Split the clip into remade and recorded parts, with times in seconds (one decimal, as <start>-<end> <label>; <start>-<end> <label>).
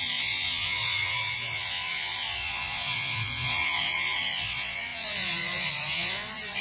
0.0-6.6 remade